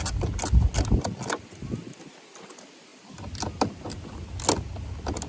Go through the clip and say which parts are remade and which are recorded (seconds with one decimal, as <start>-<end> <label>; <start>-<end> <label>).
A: 0.0-5.3 recorded